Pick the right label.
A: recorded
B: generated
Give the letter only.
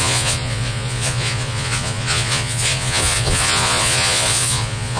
B